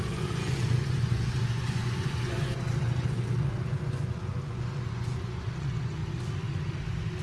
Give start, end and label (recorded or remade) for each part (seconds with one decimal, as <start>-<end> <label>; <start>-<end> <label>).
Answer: 0.0-6.0 remade; 6.0-7.2 recorded